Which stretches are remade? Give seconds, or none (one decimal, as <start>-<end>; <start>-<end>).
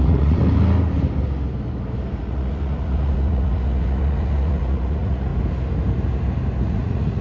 0.0-0.4; 2.2-5.3; 6.6-7.2